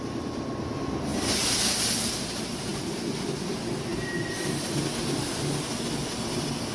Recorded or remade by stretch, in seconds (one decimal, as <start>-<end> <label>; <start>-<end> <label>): 0.0-6.7 recorded